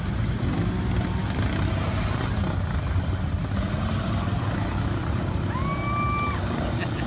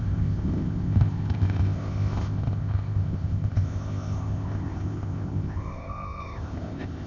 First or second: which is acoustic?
first